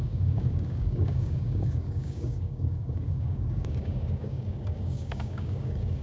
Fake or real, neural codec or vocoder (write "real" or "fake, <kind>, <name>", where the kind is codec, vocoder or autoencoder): fake, codec, DAC